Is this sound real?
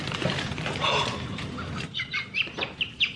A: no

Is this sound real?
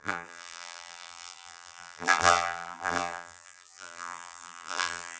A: no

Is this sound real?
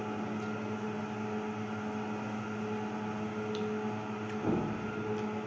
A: yes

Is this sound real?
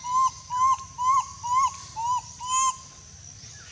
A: yes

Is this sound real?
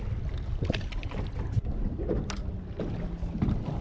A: yes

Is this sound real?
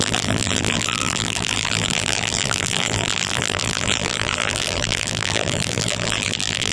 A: no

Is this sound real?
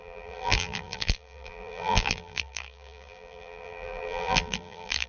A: no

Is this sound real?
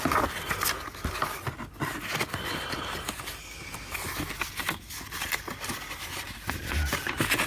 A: yes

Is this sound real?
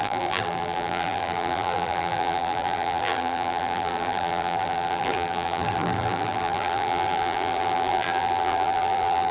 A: no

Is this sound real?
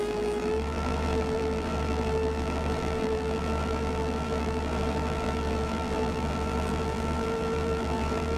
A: no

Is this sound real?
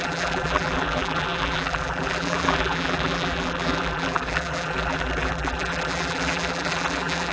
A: no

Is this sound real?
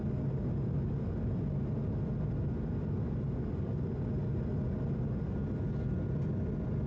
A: yes